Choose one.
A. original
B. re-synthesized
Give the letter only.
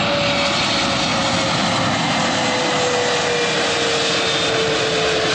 A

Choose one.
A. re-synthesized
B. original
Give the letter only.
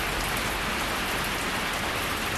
B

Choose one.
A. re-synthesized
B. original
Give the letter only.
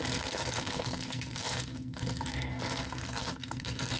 A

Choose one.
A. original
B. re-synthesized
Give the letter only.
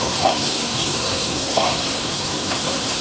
B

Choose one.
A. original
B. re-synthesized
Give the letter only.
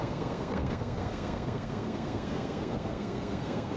B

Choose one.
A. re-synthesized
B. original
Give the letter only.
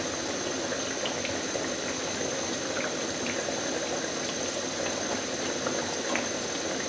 B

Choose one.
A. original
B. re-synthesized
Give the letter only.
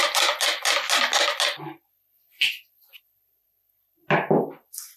A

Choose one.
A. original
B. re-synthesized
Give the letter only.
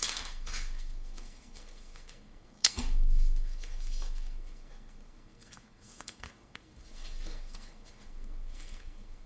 B